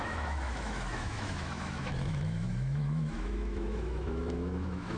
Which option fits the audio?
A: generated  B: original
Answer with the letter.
A